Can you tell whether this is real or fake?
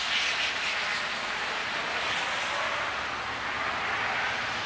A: real